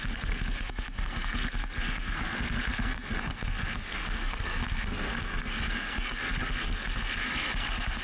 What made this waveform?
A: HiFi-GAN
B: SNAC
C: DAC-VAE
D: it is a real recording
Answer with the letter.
B